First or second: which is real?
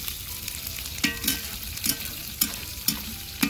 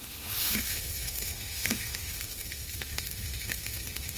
first